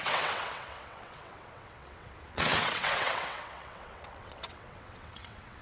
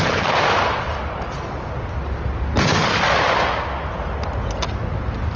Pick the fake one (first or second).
first